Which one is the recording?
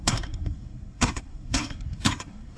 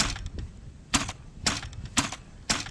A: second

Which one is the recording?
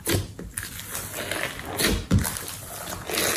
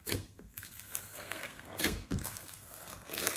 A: first